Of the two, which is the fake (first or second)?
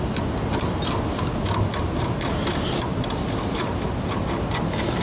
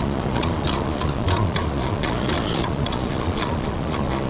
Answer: second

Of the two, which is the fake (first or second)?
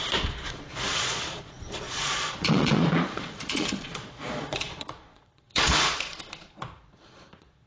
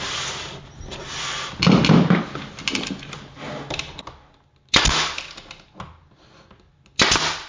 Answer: first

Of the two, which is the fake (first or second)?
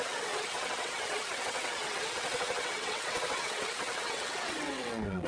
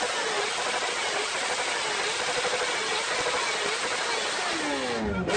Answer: first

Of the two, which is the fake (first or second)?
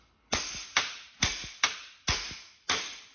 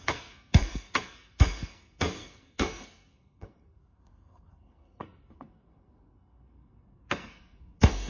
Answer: second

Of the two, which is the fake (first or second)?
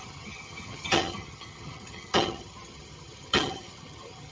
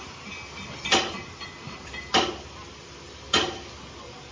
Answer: first